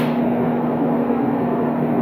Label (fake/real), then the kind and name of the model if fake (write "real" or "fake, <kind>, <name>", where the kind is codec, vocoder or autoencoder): fake, codec, SNAC